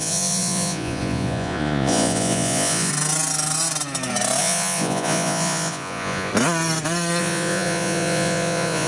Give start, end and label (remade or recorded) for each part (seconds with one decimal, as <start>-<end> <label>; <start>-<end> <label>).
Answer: 0.0-2.9 remade; 2.9-4.4 recorded; 4.4-6.3 remade; 6.3-7.2 recorded; 7.2-8.9 remade